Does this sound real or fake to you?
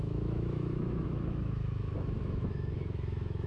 fake